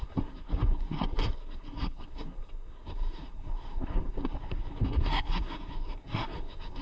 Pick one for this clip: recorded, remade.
remade